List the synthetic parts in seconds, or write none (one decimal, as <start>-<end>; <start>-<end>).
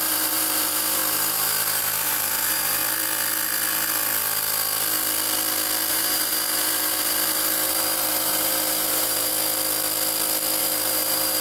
0.0-2.8; 5.9-9.3; 10.6-11.4